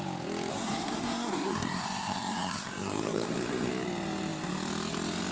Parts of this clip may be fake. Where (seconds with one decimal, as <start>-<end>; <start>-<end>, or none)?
0.5-3.7